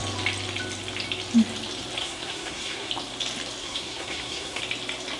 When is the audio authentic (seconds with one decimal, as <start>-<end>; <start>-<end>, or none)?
0.0-2.0; 2.9-3.6; 4.6-5.2